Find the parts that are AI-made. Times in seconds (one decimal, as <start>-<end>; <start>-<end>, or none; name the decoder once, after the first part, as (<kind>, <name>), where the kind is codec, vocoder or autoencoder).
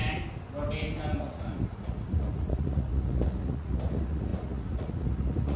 1.2-5.6 (vocoder, Vocos)